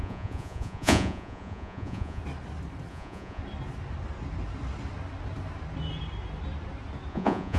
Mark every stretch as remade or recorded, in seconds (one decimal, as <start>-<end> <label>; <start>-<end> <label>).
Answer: 0.0-2.2 remade; 2.2-2.9 recorded; 2.9-3.4 remade; 3.4-7.1 recorded; 7.1-7.6 remade